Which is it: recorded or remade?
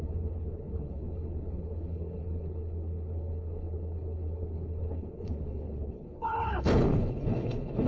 remade